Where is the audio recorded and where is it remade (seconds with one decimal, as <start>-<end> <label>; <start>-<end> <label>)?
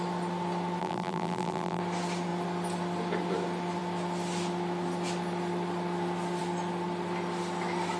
0.0-0.8 recorded; 0.8-1.8 remade; 1.8-8.0 recorded